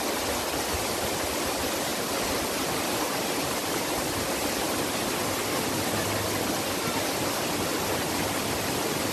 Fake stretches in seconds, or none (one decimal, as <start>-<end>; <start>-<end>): none